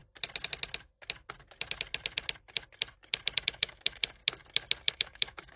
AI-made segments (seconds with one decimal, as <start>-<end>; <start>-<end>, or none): 3.4-4.2; 4.9-5.6